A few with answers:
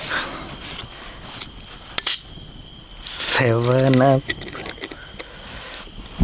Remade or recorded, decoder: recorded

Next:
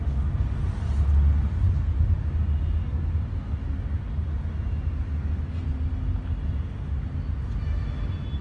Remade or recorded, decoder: recorded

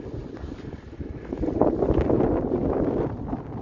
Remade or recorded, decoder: recorded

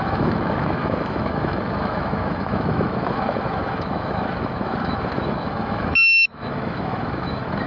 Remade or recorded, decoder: remade, autoencoder, DAC-VAE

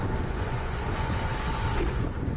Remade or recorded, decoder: remade, vocoder, Vocos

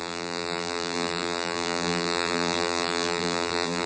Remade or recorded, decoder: remade, vocoder, BigVGAN v2